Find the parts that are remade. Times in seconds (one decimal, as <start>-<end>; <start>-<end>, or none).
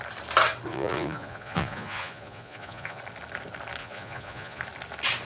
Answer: 0.7-3.0; 3.8-4.6